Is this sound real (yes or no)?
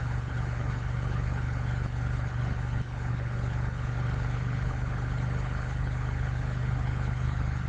no